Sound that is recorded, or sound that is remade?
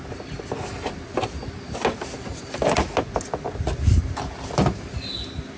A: recorded